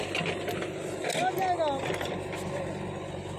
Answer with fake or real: real